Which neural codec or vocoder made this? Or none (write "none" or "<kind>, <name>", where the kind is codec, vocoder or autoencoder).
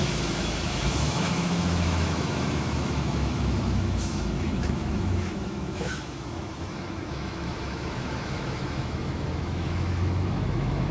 autoencoder, DAC-VAE